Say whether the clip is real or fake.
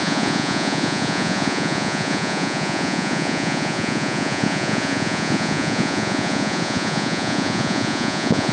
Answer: fake